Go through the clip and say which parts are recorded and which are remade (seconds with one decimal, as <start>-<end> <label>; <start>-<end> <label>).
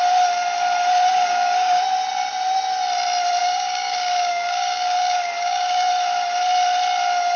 0.0-1.1 recorded; 1.1-1.8 remade; 1.8-3.4 recorded; 3.4-5.9 remade; 5.9-7.4 recorded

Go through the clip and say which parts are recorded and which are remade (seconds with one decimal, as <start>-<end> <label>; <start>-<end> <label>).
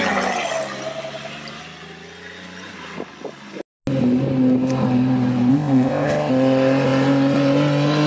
0.0-5.5 recorded; 5.5-6.3 remade; 6.3-8.1 recorded